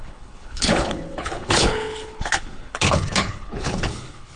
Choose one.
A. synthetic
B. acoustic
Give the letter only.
A